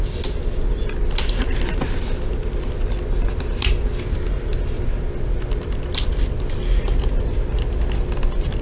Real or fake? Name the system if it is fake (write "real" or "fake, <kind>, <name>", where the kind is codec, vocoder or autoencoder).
real